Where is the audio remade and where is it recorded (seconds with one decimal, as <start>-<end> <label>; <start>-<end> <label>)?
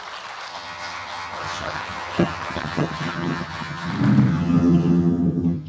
0.0-0.5 recorded; 0.5-3.9 remade; 3.9-4.3 recorded; 4.3-5.7 remade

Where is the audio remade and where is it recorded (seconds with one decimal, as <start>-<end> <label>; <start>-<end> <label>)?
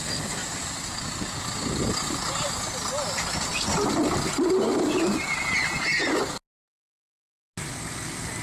0.0-0.4 recorded; 0.4-1.4 remade; 1.4-4.3 recorded; 4.3-5.3 remade; 5.3-8.4 recorded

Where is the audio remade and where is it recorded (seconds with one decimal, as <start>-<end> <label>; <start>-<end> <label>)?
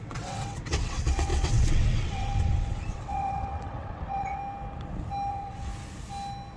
0.0-4.4 remade; 4.4-5.3 recorded; 5.3-5.7 remade; 5.7-6.6 recorded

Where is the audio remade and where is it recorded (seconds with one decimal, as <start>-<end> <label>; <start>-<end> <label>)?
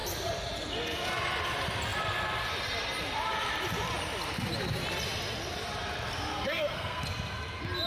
0.0-6.3 recorded; 6.3-7.0 remade; 7.0-7.9 recorded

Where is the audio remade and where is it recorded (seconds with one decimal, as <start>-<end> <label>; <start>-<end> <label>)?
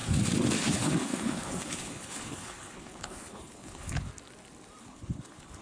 0.0-0.6 recorded; 0.6-4.1 remade; 4.1-4.8 recorded; 4.8-5.6 remade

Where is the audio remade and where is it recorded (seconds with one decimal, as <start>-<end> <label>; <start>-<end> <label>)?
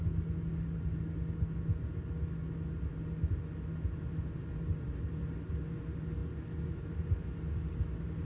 0.0-8.2 recorded